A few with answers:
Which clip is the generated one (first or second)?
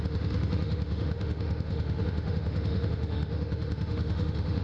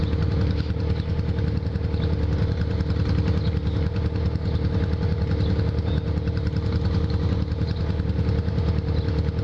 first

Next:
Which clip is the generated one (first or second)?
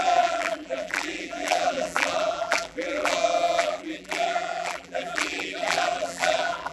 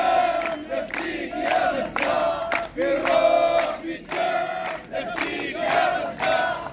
first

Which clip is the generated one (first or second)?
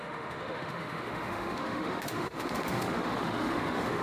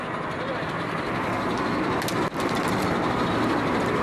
first